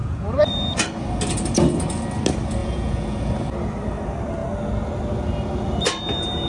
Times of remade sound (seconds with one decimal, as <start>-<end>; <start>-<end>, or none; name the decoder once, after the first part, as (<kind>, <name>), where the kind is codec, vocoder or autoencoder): 0.0-0.5 (vocoder, Vocos); 2.6-3.3